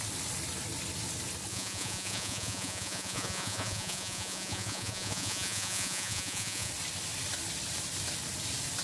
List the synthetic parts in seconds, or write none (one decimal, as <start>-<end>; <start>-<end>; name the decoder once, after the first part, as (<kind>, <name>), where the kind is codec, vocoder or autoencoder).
1.5-6.7 (vocoder, Vocos)